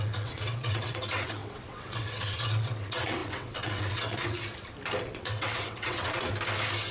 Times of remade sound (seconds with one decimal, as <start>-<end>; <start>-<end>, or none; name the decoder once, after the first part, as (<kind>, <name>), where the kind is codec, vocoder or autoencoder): 0.0-4.4 (vocoder, WaveNeXt); 5.0-6.3